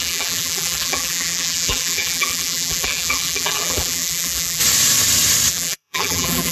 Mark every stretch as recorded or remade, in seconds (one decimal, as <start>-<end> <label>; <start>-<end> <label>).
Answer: 0.0-4.6 remade; 4.6-5.5 recorded; 5.5-6.5 remade